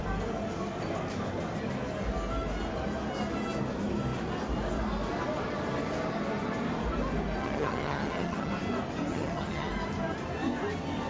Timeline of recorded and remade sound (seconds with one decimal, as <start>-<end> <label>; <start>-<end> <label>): 0.0-7.4 recorded; 7.4-8.5 remade; 8.5-9.1 recorded; 9.1-9.7 remade; 9.7-11.1 recorded